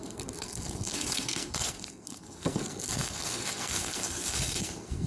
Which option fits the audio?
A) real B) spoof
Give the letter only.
B